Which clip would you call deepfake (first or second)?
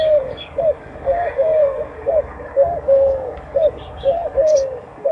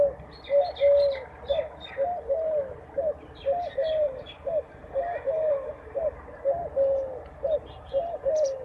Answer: first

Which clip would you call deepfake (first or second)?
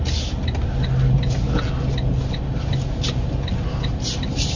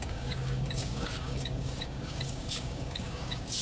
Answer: second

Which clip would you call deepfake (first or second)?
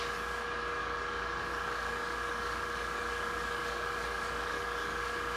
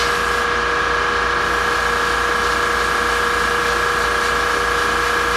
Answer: first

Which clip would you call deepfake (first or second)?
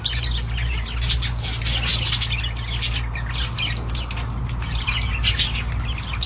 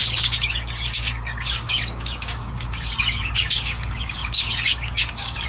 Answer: second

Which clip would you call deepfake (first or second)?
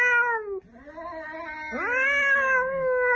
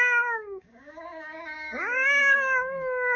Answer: second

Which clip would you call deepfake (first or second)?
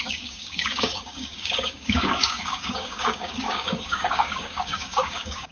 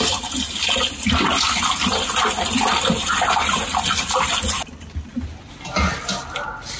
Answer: first